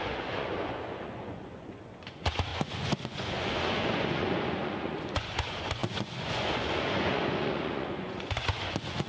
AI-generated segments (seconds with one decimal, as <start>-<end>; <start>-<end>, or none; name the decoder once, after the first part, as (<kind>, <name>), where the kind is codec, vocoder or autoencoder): 0.0-9.1 (vocoder, Vocos)